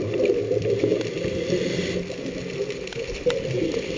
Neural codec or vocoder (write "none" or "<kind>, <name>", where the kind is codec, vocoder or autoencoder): vocoder, BigVGAN v2